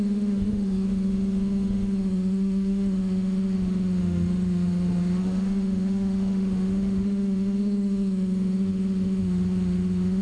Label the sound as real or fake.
fake